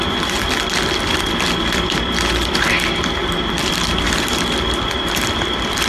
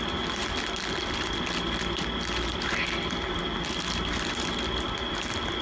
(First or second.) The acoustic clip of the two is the second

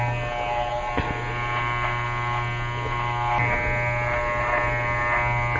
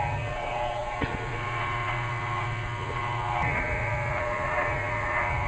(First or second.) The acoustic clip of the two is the first